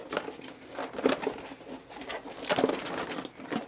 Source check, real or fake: real